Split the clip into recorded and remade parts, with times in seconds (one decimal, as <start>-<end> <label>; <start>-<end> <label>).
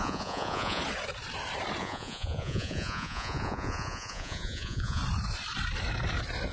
0.0-0.8 remade; 0.8-1.8 recorded; 1.8-5.0 remade; 5.0-6.5 recorded